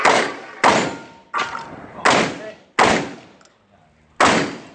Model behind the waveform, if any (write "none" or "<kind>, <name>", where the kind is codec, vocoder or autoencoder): none